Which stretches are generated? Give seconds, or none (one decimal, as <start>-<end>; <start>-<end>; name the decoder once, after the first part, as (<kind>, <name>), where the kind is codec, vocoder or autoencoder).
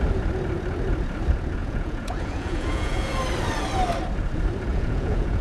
1.6-3.2 (vocoder, Vocos); 4.7-5.4